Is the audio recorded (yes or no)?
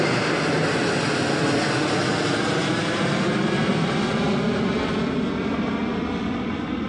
yes